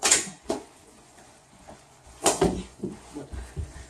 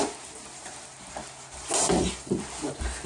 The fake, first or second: first